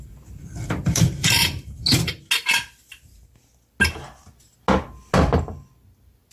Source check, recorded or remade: recorded